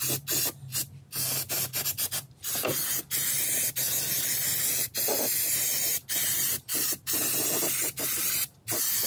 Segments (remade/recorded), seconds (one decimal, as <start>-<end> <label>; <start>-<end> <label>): 0.0-9.1 recorded